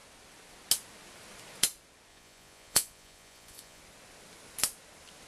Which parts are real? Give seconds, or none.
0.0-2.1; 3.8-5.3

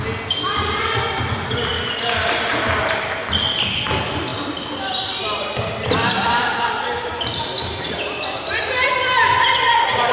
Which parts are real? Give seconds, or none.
0.0-10.1

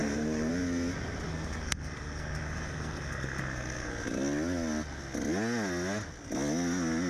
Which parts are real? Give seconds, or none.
0.5-1.3; 3.9-7.1

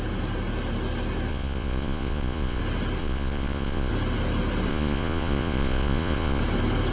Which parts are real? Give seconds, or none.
0.0-1.3; 2.6-3.0; 3.9-4.7; 6.4-6.9